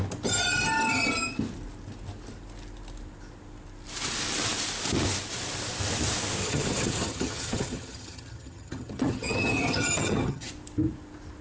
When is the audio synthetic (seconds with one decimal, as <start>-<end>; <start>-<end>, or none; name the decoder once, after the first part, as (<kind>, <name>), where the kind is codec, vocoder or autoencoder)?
6.4-10.5 (vocoder, HiFi-GAN)

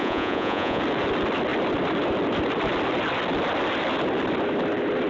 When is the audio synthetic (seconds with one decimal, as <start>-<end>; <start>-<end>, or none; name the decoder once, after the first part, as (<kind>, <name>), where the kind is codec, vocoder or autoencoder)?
0.0-0.8 (vocoder, Vocos)

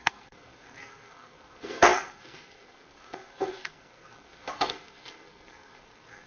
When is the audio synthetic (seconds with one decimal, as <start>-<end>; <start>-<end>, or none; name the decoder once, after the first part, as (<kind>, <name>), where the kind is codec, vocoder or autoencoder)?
0.0-6.3 (codec, SNAC)

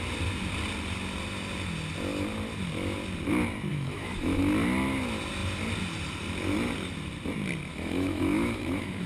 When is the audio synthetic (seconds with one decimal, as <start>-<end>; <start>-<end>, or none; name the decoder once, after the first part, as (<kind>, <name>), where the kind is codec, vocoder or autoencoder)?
3.7-4.4 (autoencoder, DAC-VAE); 7.7-9.1

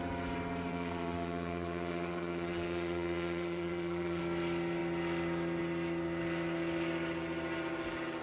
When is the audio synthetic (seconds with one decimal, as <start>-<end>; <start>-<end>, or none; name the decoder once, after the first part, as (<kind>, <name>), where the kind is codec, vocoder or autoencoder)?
0.7-4.2 (vocoder, WaveNeXt)

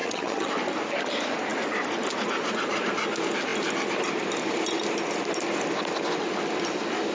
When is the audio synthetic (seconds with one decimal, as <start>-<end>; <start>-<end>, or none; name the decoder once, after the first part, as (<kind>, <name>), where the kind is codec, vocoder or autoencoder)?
0.0-0.5 (vocoder, HiFi-GAN)

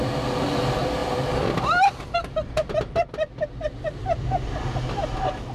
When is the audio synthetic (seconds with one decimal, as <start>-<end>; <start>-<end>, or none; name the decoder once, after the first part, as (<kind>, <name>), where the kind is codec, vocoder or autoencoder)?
1.0-2.7 (vocoder, BigVGAN v2)